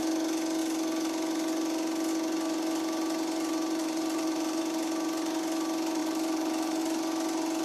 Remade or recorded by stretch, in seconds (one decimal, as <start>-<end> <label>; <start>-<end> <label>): 0.0-3.8 recorded; 3.8-4.6 remade; 4.6-6.0 recorded; 6.0-6.8 remade; 6.8-7.6 recorded